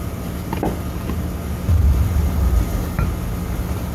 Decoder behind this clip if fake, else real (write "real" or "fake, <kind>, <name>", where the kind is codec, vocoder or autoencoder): real